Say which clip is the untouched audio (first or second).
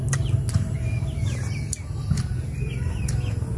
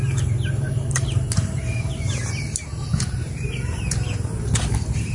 first